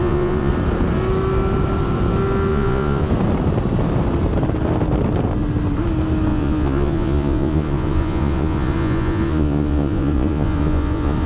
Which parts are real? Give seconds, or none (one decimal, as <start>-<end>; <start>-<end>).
0.5-2.5; 3.1-6.3